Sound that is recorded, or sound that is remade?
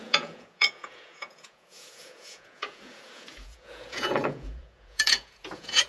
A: remade